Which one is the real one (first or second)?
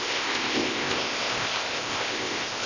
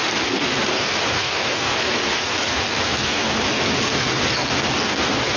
second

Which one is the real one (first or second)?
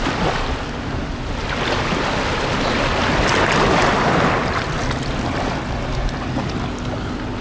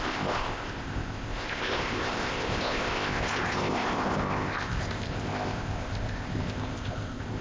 first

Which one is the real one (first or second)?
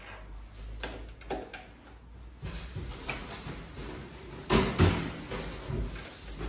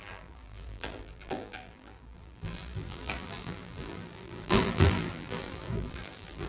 first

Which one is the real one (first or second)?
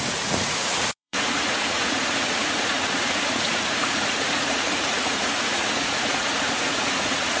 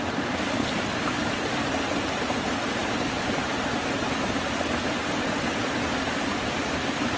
second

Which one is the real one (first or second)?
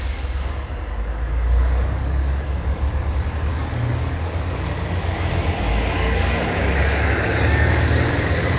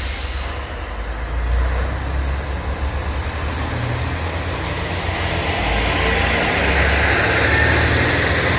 second